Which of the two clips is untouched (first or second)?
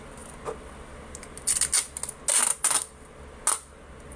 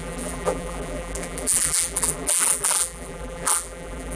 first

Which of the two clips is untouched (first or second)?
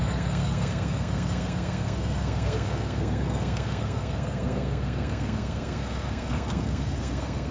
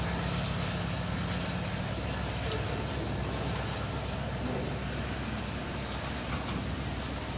second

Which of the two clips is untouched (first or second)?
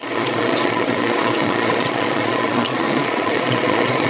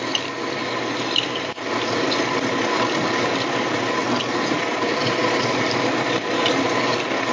second